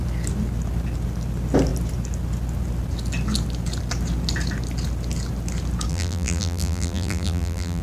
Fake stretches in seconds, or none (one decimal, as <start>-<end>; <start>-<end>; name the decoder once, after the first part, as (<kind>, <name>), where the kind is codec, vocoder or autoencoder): 5.9-7.8 (vocoder, BigVGAN v2)